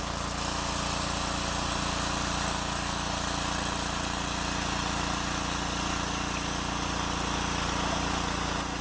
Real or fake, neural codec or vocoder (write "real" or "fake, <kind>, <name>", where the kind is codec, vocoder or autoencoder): real